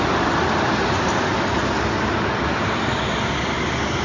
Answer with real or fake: real